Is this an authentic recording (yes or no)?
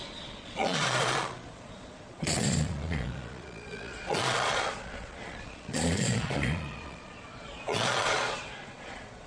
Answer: no